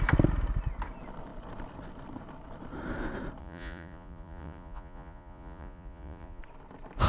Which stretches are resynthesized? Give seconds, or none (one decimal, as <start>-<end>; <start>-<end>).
3.4-6.4